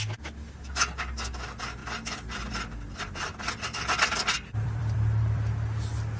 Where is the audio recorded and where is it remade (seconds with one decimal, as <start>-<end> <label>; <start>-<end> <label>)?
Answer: 0.0-1.8 recorded; 1.8-5.5 remade; 5.5-6.2 recorded